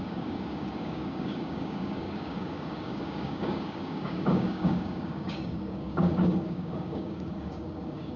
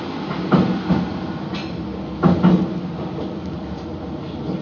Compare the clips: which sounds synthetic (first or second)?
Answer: first